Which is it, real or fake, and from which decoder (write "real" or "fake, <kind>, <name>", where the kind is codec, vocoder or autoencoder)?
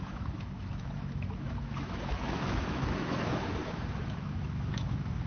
fake, autoencoder, DAC-VAE